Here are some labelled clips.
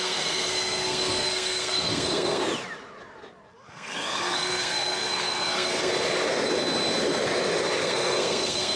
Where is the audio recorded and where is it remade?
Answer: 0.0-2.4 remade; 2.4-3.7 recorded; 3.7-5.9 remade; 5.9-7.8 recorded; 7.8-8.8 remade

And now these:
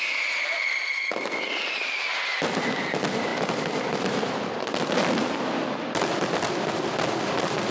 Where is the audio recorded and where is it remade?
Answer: 0.0-7.7 recorded

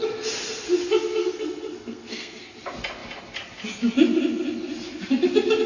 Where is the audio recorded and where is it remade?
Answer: 0.0-1.2 recorded; 1.2-2.4 remade; 2.4-5.7 recorded

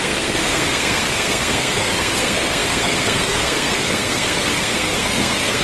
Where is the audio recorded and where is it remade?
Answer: 0.0-5.6 remade

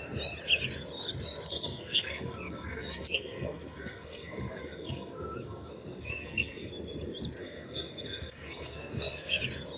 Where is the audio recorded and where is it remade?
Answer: 0.0-1.5 recorded; 1.5-6.7 remade; 6.7-7.4 recorded; 7.4-9.4 remade; 9.4-9.8 recorded